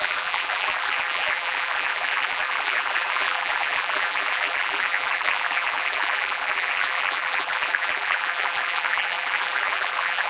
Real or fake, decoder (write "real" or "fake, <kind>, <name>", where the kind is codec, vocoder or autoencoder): fake, vocoder, BigVGAN v2